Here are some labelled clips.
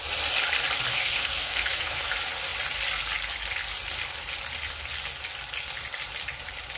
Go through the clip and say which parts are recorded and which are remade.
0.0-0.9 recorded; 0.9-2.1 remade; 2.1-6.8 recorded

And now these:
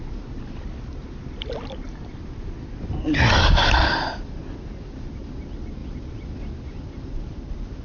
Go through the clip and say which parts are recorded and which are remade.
0.0-7.8 recorded

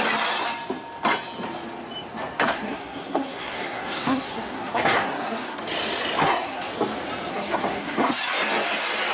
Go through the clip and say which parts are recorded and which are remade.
0.0-2.5 recorded; 2.5-5.6 remade; 5.6-6.2 recorded; 6.2-6.7 remade; 6.7-7.3 recorded; 7.3-8.2 remade; 8.2-9.1 recorded

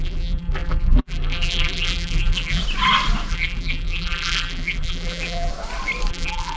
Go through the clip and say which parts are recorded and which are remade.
0.0-2.6 remade; 2.6-3.3 recorded; 3.3-5.5 remade; 5.5-6.1 recorded; 6.1-6.6 remade

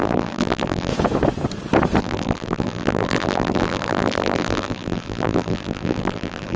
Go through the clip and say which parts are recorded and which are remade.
0.0-0.9 remade; 0.9-2.0 recorded; 2.0-6.6 remade

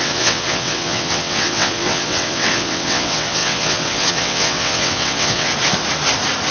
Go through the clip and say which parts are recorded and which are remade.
0.0-5.5 remade; 5.5-6.5 recorded